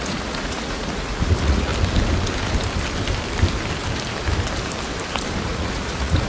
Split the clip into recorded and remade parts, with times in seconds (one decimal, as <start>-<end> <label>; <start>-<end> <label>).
0.0-1.7 remade; 1.7-5.5 recorded; 5.5-6.3 remade